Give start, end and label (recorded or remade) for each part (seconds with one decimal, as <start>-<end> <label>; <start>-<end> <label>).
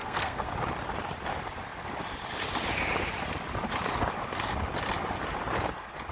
0.0-0.5 remade; 0.5-6.1 recorded